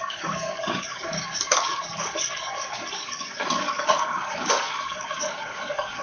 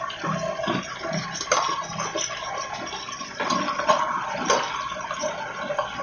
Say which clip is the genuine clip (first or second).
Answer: second